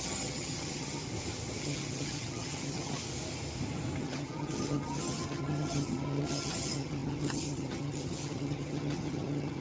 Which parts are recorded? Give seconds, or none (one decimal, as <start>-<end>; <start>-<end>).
1.0-1.6; 3.0-4.0